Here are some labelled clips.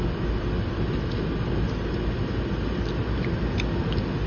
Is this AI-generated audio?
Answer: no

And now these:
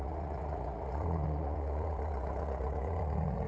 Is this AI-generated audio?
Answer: yes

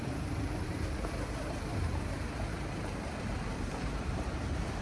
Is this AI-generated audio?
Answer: yes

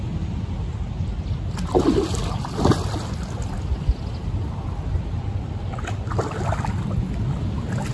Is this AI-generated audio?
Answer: no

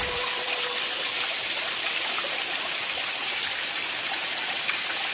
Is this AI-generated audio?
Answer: yes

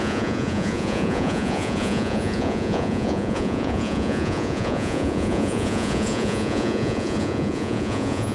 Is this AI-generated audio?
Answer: yes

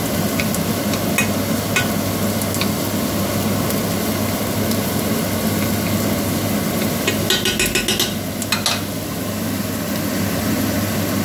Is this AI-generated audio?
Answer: no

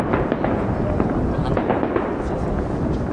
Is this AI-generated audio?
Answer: no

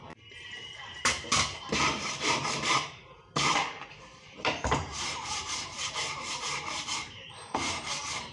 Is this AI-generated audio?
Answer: yes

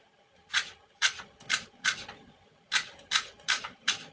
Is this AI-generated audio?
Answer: yes